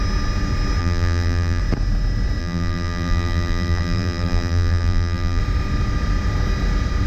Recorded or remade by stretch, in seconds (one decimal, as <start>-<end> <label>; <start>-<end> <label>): 0.0-0.8 recorded; 0.8-1.6 remade; 1.6-2.4 recorded; 2.4-5.4 remade; 5.4-7.1 recorded